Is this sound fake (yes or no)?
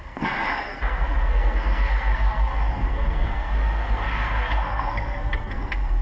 yes